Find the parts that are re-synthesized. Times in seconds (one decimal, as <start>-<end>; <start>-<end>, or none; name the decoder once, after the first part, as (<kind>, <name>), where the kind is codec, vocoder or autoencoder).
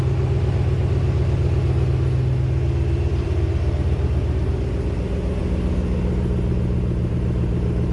3.1-4.5 (vocoder, BigVGAN v2)